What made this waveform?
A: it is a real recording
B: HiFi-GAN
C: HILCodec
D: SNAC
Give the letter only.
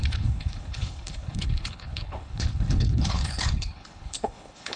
C